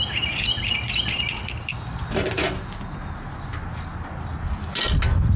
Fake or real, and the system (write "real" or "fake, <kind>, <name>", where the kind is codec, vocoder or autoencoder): real